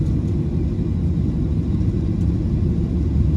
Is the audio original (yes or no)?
yes